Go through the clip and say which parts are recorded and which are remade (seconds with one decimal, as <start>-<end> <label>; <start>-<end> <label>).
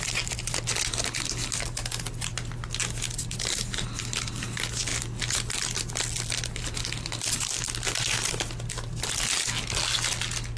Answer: 0.0-10.6 recorded